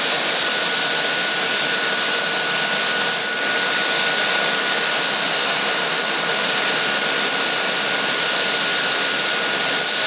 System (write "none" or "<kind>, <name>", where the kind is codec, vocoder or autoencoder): none